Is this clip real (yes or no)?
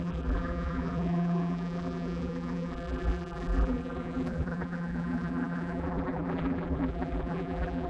no